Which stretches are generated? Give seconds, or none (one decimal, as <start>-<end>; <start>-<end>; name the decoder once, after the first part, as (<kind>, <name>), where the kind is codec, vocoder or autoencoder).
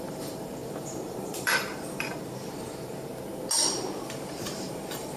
0.0-3.1 (vocoder, BigVGAN v2); 4.6-5.2